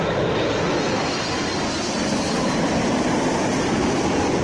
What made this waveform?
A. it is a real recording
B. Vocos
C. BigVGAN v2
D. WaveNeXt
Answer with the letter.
C